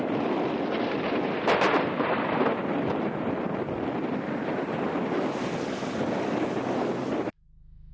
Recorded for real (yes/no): yes